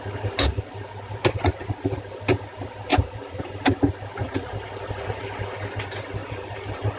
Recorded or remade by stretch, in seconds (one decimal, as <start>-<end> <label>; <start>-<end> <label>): 0.0-2.9 recorded; 2.9-3.7 remade; 3.7-4.2 recorded; 4.2-5.2 remade; 5.2-6.2 recorded; 6.2-7.0 remade